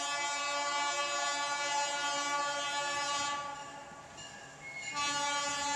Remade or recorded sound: recorded